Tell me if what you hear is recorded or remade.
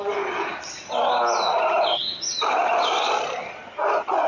recorded